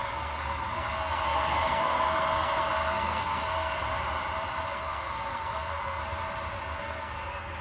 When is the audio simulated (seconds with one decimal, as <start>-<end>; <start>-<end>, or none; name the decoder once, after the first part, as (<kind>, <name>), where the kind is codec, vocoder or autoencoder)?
0.0-3.8 (codec, SNAC); 4.7-6.0; 6.7-7.6